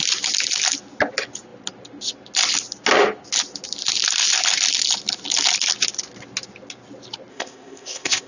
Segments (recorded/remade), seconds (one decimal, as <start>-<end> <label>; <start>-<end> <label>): 0.0-7.3 recorded; 7.3-8.3 remade